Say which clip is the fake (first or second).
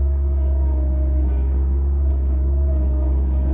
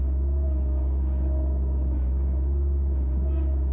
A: first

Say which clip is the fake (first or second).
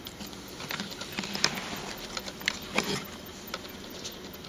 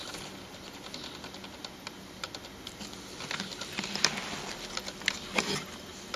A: first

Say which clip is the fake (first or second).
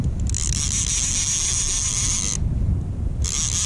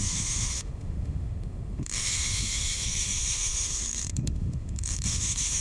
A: second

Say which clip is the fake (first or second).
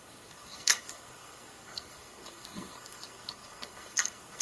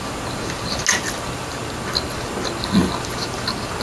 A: first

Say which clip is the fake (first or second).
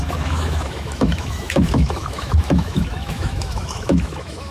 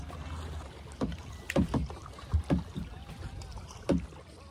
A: first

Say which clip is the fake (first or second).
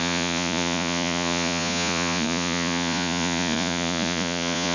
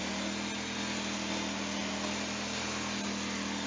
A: first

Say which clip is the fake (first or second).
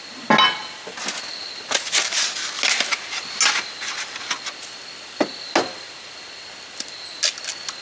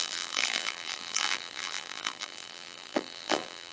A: second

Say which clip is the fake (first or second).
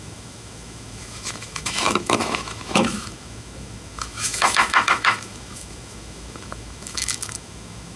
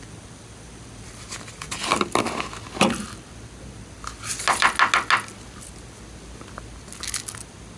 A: first